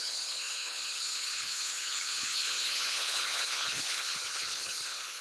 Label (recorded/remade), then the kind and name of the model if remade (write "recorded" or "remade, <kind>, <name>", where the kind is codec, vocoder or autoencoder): remade, codec, HILCodec